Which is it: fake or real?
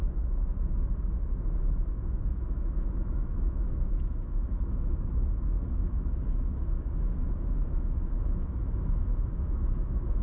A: fake